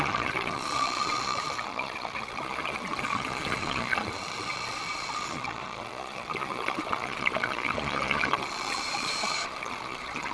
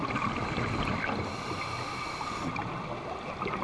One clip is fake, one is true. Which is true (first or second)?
second